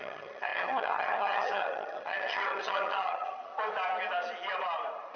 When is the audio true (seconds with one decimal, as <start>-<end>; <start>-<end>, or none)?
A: 3.5-5.2